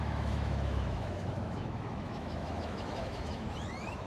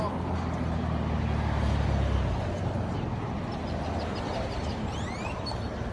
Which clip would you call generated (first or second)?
first